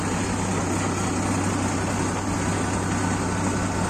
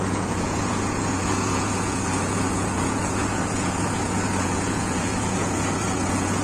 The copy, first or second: second